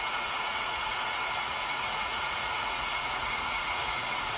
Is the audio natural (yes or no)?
no